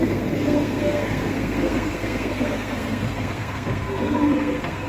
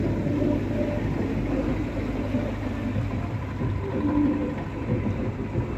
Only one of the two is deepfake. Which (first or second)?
first